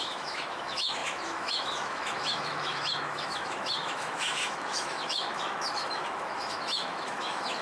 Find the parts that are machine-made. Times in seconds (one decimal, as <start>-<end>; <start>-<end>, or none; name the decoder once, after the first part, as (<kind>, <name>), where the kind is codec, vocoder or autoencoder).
0.0-7.6 (autoencoder, DAC-VAE)